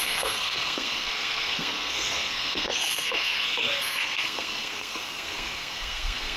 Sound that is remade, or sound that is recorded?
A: remade